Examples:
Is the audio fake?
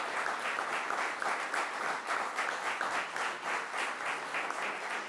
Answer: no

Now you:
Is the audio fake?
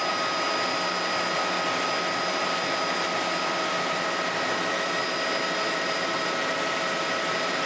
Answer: no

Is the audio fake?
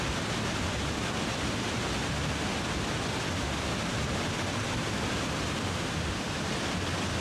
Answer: no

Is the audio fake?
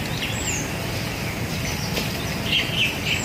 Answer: no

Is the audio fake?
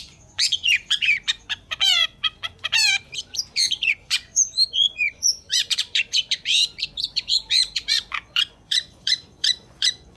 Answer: yes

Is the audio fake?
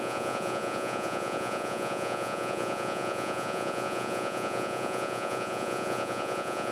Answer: yes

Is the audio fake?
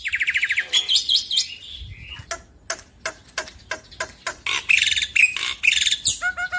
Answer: no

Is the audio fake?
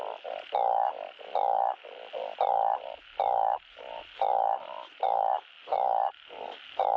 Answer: no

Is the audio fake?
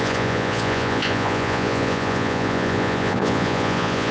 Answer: yes